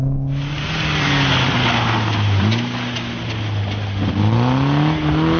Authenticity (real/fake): real